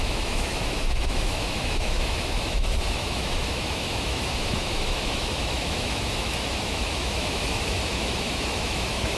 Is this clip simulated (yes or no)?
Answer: yes